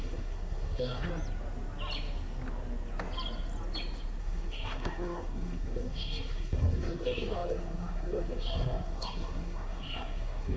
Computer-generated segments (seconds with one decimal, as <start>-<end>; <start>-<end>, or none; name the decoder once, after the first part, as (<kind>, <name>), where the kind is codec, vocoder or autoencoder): 0.0-1.1 (codec, SNAC); 4.2-10.6